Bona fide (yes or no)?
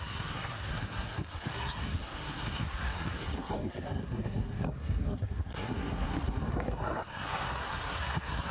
no